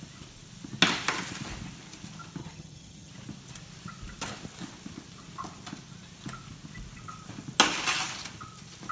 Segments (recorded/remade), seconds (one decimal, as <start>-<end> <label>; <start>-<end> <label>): 0.0-2.4 recorded; 2.4-3.1 remade; 3.1-8.9 recorded